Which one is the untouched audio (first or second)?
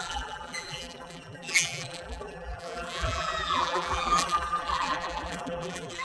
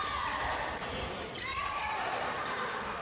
second